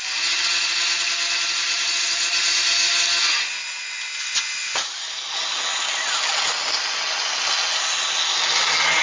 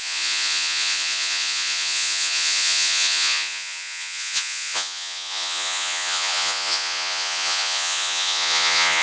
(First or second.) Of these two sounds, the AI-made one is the second